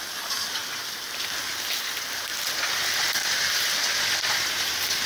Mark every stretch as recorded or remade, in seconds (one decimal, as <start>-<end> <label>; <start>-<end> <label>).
0.0-5.1 recorded